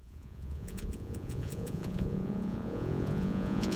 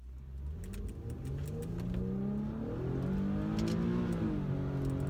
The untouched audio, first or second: second